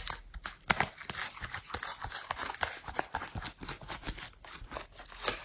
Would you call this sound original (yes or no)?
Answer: yes